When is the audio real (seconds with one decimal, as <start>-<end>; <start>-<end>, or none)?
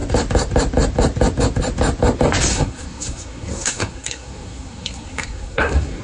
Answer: 0.0-2.5